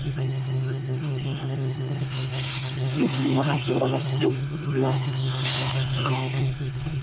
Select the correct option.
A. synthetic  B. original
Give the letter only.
A